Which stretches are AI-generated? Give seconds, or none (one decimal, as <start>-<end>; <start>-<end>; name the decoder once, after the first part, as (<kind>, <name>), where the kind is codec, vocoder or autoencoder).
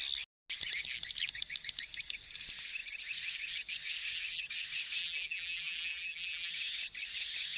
5.0-6.5 (vocoder, BigVGAN v2)